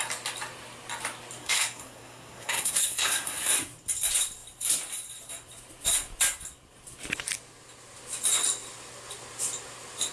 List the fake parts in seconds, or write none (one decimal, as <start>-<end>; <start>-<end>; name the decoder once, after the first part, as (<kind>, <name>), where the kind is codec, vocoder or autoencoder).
1.4-3.5 (codec, SNAC)